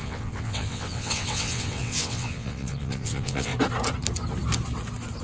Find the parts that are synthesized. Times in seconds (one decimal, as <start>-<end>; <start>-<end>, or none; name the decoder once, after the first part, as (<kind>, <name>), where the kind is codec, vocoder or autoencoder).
0.0-3.5 (vocoder, WaveNeXt)